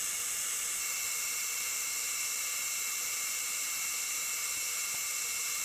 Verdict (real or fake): fake